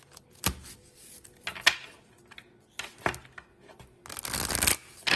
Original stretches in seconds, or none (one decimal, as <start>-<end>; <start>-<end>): 0.0-5.2